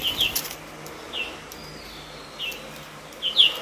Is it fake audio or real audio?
real